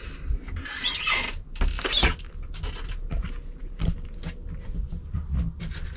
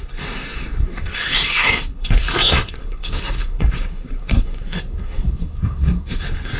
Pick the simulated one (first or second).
second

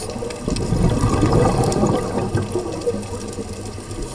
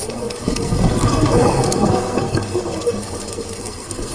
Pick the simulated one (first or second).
second